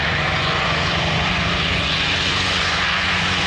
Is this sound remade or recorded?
remade